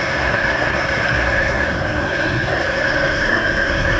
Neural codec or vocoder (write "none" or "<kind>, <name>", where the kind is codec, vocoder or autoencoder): codec, SNAC